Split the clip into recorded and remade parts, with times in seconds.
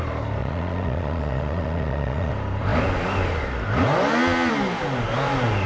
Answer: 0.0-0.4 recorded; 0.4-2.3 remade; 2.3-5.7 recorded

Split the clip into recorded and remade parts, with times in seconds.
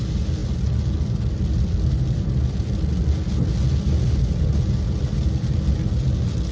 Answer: 0.0-6.5 recorded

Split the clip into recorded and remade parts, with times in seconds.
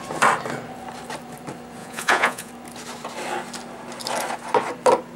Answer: 0.0-1.8 recorded; 1.8-2.5 remade; 2.5-5.2 recorded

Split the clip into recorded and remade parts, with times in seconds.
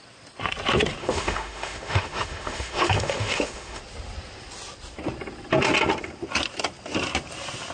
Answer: 0.0-1.0 recorded; 1.0-3.8 remade; 3.8-7.7 recorded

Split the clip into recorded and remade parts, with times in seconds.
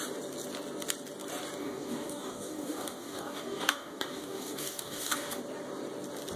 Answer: 0.0-1.6 recorded; 1.6-5.4 remade; 5.4-6.4 recorded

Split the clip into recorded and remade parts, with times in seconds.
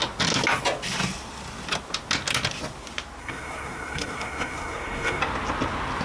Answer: 0.0-3.2 recorded; 3.2-5.2 remade; 5.2-6.0 recorded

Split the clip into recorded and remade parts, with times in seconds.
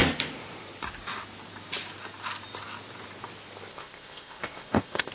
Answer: 0.0-3.7 recorded; 3.7-5.1 remade